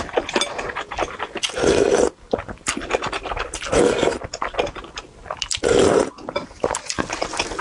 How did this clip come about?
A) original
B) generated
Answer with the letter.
A